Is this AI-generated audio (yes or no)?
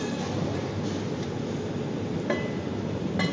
no